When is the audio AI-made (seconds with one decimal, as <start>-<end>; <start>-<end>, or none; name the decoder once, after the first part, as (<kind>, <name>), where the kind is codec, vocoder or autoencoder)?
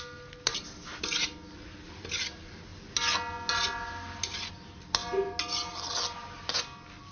none